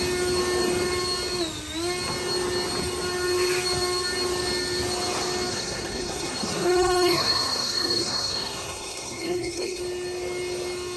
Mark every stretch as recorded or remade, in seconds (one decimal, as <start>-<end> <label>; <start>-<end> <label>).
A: 0.0-5.5 recorded; 5.5-9.8 remade; 9.8-11.0 recorded